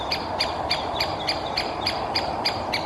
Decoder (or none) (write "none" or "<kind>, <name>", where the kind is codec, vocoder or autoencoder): none